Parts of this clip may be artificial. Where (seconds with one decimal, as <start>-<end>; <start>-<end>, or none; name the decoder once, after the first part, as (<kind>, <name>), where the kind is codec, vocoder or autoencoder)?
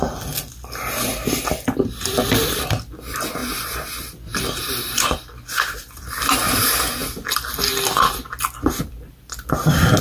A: none